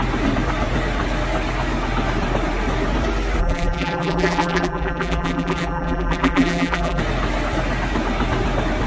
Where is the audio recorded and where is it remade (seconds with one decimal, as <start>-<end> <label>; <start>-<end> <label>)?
0.0-3.4 recorded; 3.4-7.0 remade; 7.0-8.9 recorded